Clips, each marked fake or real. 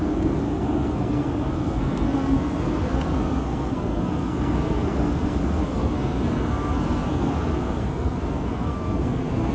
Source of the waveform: fake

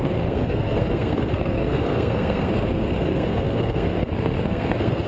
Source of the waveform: fake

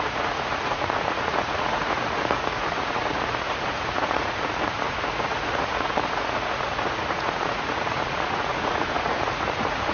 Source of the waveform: fake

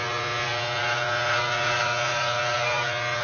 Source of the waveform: fake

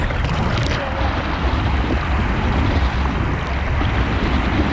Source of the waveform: real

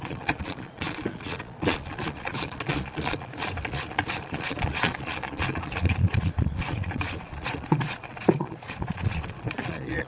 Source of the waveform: fake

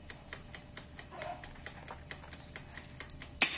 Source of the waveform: real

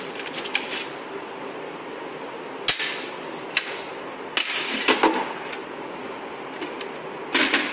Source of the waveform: real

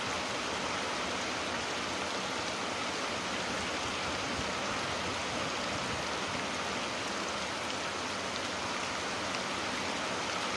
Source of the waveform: real